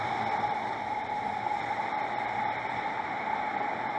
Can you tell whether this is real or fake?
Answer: fake